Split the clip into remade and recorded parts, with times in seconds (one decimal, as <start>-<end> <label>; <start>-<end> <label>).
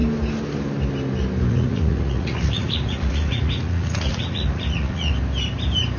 0.0-1.5 recorded; 1.5-5.1 remade; 5.1-6.0 recorded